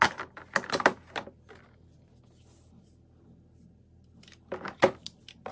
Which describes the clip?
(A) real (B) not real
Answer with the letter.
A